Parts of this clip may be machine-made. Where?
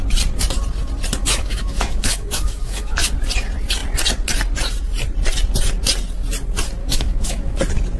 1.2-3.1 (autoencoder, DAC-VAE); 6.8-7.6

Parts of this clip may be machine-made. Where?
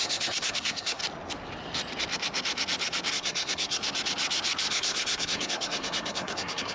0.0-1.0 (codec, SNAC); 3.1-3.8; 4.7-6.7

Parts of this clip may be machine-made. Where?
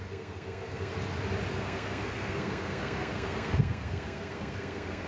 0.0-0.9 (codec, SNAC); 1.5-5.1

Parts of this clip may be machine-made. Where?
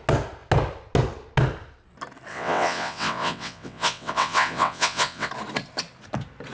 2.3-5.3 (vocoder, WaveNeXt)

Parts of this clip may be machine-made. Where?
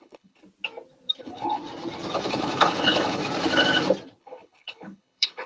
0.0-0.4 (codec, HILCodec); 1.2-1.6; 2.3-3.2; 4.2-5.5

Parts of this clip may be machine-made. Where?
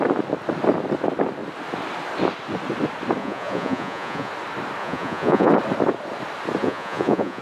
3.2-4.3 (vocoder, Vocos); 4.8-5.5; 6.6-7.4